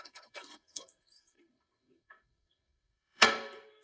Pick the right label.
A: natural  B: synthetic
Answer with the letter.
B